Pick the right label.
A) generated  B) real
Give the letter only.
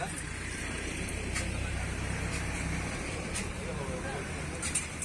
A